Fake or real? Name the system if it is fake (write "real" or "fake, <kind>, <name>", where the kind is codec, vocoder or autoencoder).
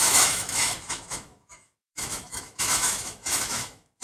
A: fake, autoencoder, DAC-VAE